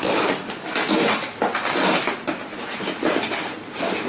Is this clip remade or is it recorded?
recorded